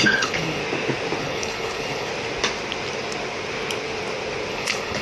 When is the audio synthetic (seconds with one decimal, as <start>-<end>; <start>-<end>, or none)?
0.0-0.6; 1.2-2.1; 4.5-5.0